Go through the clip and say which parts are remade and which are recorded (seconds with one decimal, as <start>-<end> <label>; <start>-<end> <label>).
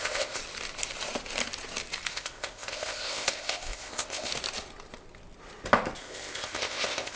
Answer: 0.0-0.4 remade; 0.4-2.1 recorded; 2.1-4.3 remade; 4.3-6.0 recorded; 6.0-7.2 remade